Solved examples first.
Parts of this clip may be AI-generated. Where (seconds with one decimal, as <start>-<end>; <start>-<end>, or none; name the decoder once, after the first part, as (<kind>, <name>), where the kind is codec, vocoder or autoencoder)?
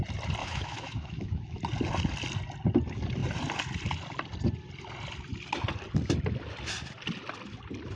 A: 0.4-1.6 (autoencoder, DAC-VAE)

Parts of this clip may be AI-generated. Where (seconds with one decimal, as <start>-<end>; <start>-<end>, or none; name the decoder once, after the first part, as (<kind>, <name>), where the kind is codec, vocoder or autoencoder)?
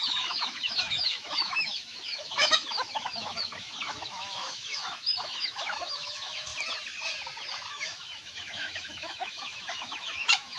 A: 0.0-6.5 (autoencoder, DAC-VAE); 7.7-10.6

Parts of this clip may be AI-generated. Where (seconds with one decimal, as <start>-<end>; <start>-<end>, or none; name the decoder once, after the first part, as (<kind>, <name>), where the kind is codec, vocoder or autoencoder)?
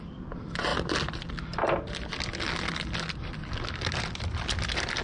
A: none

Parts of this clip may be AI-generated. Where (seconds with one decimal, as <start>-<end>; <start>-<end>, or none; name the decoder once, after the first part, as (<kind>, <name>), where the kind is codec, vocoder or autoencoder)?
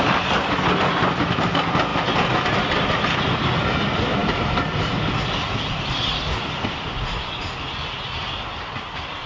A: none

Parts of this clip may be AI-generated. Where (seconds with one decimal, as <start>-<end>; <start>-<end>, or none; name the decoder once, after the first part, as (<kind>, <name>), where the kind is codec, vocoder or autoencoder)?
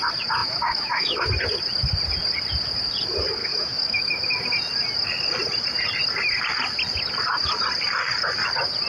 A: 0.4-1.3 (autoencoder, DAC-VAE); 3.4-4.1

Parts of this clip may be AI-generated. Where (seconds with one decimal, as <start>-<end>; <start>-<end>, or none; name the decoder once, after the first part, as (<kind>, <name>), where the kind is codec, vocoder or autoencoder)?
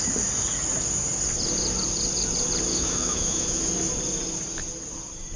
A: 2.7-3.6 (autoencoder, DAC-VAE)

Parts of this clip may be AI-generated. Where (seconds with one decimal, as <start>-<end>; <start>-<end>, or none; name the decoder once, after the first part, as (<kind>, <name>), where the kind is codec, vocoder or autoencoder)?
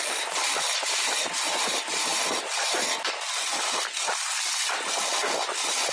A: none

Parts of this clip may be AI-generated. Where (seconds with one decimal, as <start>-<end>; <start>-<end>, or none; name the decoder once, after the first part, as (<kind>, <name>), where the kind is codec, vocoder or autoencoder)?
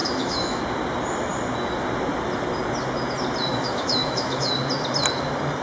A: 0.0-0.6 (autoencoder, DAC-VAE); 3.5-4.5